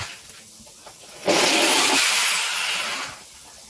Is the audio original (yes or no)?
yes